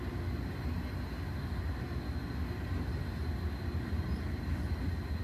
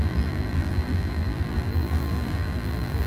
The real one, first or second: first